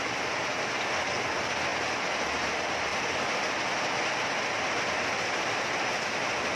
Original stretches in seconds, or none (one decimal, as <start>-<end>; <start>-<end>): 0.0-6.6